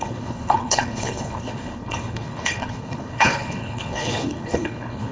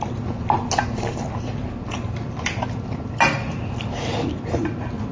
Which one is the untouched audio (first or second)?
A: second